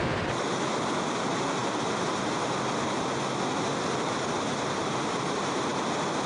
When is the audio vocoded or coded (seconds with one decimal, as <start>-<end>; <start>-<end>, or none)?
none